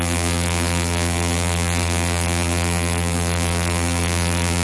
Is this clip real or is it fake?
fake